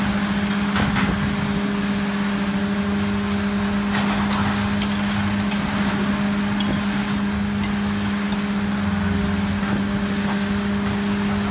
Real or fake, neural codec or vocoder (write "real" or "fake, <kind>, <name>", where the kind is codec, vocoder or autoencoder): real